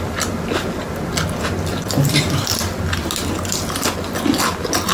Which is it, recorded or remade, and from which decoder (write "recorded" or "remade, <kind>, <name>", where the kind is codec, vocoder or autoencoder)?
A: recorded